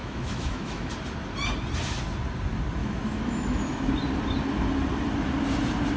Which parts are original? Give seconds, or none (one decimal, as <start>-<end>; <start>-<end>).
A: 0.9-2.8; 3.9-6.0